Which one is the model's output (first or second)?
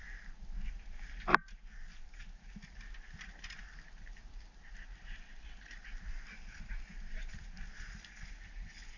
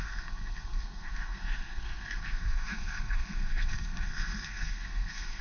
second